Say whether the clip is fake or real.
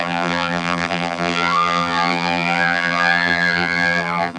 fake